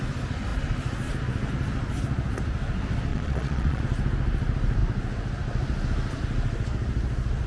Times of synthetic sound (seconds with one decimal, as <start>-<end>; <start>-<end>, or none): 3.1-3.8